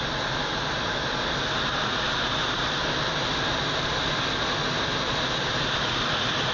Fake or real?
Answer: real